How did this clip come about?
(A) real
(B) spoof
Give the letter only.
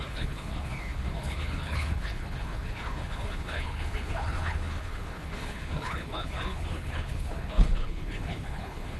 B